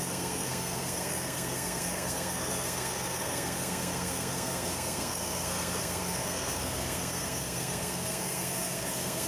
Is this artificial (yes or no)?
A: yes